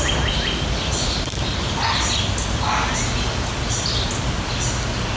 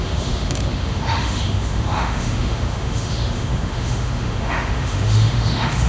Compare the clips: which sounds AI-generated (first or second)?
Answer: second